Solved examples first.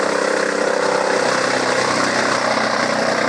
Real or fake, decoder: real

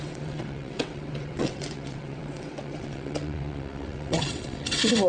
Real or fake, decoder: fake, vocoder, WaveNeXt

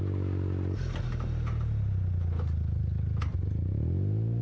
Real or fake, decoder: real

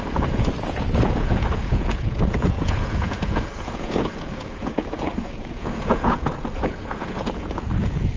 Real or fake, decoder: fake, vocoder, Vocos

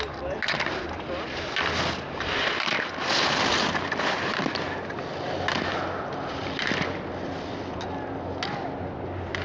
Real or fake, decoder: real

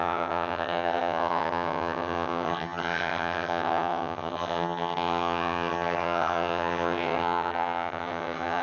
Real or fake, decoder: fake, vocoder, HiFi-GAN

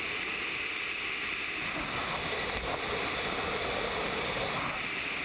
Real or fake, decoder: fake, vocoder, BigVGAN v2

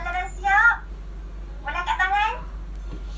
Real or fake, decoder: real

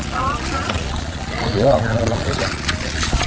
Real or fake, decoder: fake, vocoder, Vocos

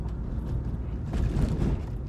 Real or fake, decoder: real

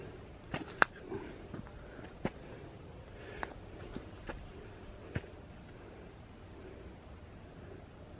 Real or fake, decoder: real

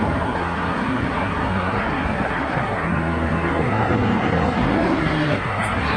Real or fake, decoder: fake, codec, SNAC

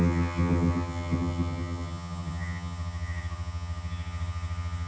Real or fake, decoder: fake, vocoder, HiFi-GAN